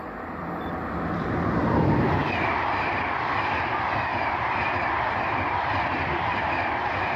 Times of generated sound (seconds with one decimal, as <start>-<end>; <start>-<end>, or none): 0.0-7.2